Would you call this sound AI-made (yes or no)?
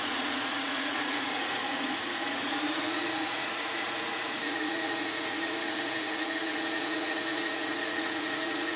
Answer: yes